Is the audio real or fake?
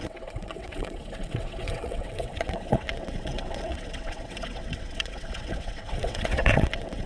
fake